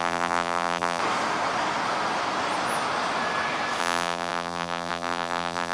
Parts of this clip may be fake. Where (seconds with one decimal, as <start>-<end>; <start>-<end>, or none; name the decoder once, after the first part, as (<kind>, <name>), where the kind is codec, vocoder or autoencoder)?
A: 0.0-1.0 (vocoder, BigVGAN v2); 3.8-5.7

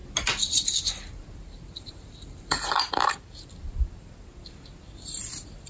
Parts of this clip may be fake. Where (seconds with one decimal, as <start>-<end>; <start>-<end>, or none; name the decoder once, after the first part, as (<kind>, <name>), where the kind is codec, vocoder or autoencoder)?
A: 1.4-3.0 (vocoder, BigVGAN v2); 5.2-5.7

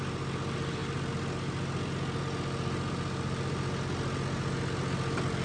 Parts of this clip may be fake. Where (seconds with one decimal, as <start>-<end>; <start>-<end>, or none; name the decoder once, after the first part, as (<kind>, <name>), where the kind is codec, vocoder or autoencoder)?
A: none